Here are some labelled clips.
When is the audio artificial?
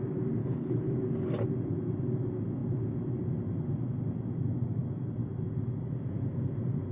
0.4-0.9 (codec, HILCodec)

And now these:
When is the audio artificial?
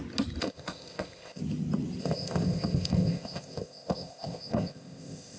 0.4-1.4 (codec, ZipCodec); 2.0-5.4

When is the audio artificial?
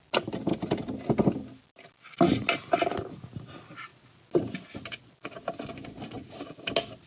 none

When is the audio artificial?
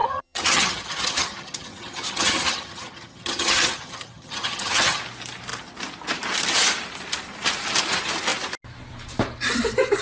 0.0-5.0 (vocoder, HiFi-GAN)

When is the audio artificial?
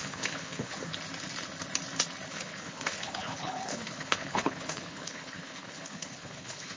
0.0-0.9 (codec, HILCodec); 2.3-6.8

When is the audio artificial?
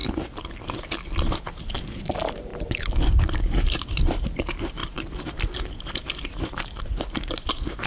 1.3-2.5 (vocoder, BigVGAN v2); 3.4-7.9